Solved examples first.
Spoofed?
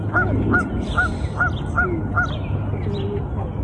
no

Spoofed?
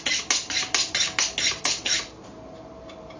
no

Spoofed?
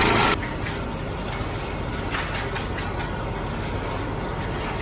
no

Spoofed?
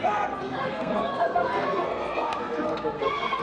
yes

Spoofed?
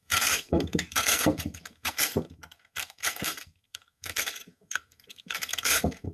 yes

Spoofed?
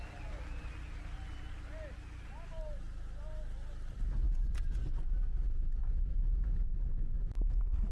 no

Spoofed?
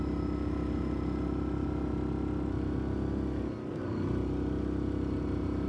no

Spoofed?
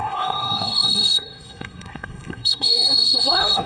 yes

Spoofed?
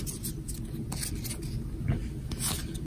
no